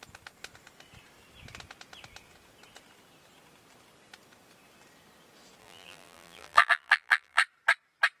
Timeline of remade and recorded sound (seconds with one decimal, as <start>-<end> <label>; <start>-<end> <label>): 0.0-5.6 recorded; 5.6-7.4 remade; 7.4-8.2 recorded